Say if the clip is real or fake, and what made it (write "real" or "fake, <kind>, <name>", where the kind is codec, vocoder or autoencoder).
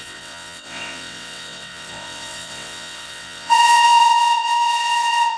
fake, vocoder, WaveNeXt